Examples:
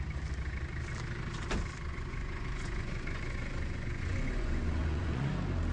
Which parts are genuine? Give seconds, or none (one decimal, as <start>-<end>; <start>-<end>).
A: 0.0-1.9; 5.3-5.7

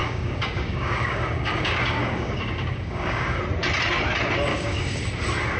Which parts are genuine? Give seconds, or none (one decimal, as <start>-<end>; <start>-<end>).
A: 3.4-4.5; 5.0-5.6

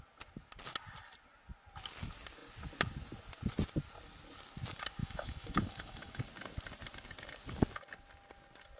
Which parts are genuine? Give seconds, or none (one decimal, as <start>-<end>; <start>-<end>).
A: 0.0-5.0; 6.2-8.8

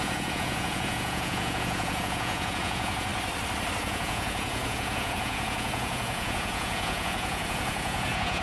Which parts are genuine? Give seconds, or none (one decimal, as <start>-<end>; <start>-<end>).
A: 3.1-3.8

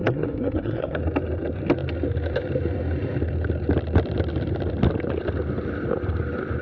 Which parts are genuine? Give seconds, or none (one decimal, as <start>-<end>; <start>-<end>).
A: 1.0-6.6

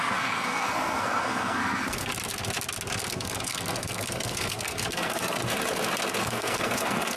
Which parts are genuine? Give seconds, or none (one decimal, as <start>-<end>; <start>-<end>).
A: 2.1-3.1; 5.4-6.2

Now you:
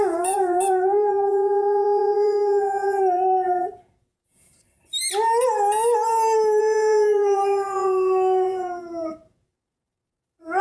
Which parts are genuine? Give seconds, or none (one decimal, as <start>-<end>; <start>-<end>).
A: 4.5-6.6